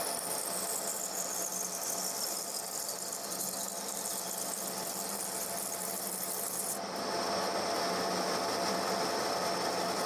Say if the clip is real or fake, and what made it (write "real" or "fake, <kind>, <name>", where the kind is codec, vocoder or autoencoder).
real